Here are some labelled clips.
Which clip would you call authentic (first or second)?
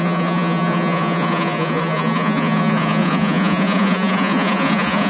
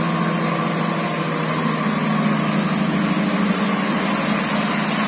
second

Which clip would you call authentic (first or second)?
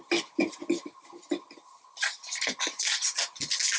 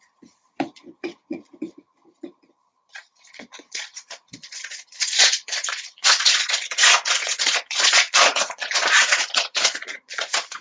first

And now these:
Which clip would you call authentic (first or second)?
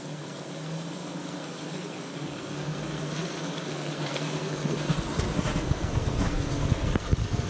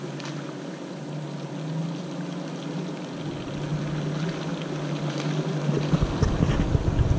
second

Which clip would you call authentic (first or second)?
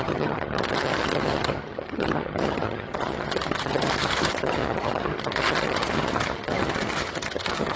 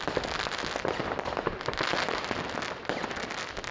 second